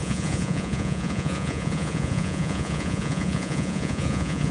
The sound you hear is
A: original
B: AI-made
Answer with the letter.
B